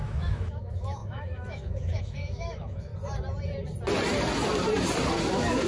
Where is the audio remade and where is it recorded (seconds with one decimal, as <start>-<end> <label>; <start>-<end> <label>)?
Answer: 0.0-2.9 remade; 2.9-5.3 recorded; 5.3-5.7 remade